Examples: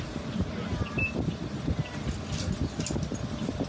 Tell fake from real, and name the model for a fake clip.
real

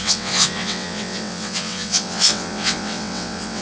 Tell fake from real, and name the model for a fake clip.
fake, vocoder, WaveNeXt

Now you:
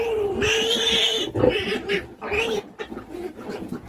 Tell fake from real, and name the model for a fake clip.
real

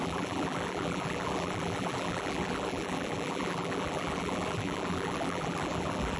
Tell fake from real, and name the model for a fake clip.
fake, vocoder, BigVGAN v2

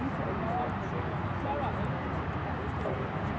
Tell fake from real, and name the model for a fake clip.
real